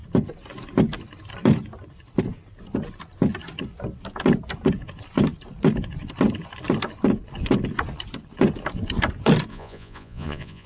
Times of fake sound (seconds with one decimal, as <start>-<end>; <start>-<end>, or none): 9.5-10.7